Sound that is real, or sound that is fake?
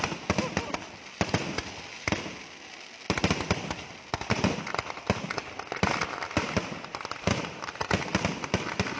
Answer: real